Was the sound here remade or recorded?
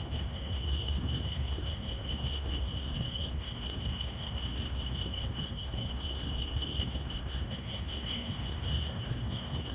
remade